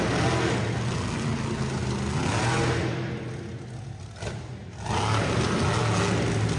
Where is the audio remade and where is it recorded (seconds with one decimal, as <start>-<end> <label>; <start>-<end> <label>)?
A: 0.0-6.6 recorded